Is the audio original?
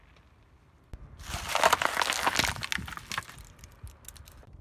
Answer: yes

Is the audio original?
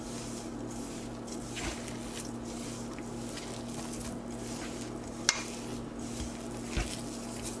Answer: yes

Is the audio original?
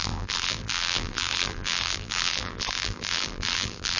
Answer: no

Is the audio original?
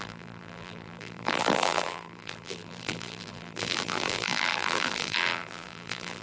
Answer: no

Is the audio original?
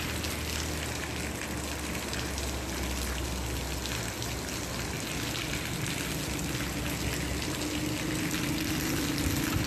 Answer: yes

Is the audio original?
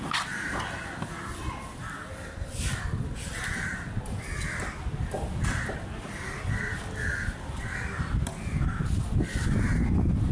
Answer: yes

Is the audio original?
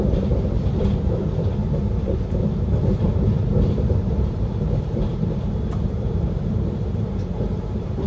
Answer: no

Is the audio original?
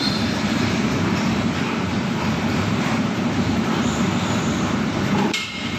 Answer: no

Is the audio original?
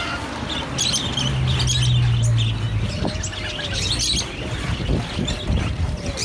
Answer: yes